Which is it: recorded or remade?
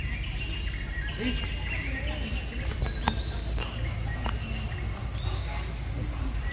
recorded